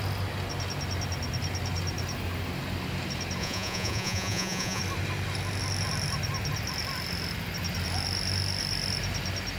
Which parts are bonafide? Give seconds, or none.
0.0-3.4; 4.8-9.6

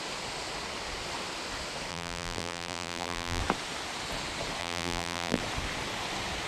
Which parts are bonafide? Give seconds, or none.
0.0-1.9; 3.4-4.6; 5.4-6.5

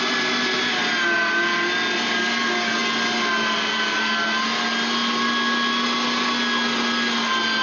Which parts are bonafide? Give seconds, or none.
0.0-7.6